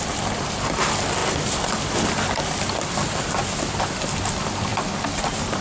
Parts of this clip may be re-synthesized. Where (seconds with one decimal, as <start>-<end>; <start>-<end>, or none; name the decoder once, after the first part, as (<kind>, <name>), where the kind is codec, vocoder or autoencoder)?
none